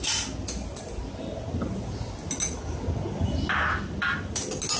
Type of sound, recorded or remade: recorded